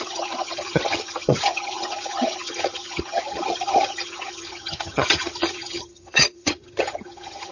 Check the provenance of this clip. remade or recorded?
remade